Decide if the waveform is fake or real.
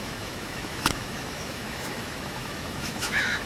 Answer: fake